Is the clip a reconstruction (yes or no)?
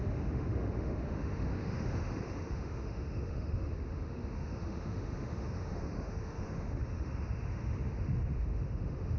yes